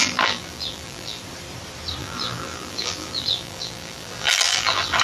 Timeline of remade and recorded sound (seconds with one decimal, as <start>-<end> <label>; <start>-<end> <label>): 0.0-1.2 remade; 1.2-2.0 recorded; 2.0-5.0 remade